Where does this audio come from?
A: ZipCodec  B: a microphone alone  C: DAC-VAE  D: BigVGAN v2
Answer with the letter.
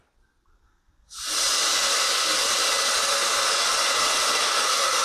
B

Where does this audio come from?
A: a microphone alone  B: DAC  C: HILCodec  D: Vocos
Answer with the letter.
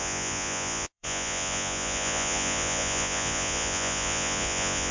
D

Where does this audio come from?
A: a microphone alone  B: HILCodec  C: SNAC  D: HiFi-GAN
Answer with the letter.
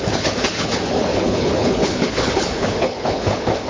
B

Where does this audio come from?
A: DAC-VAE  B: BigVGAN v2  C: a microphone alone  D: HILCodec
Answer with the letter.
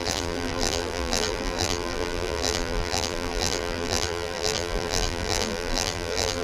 B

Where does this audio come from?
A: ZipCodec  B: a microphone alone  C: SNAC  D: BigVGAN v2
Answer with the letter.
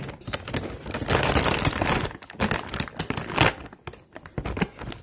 B